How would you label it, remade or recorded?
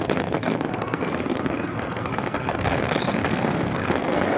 remade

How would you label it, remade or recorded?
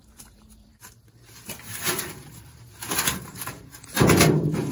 remade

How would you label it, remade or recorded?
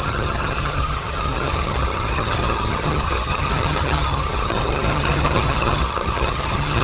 remade